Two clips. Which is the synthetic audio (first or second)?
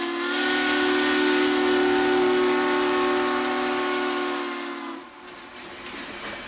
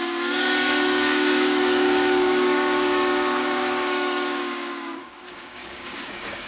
second